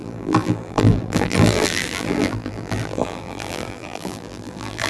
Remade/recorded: remade